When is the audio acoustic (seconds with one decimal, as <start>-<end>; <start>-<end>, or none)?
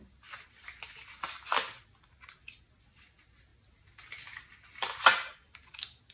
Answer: 0.0-6.1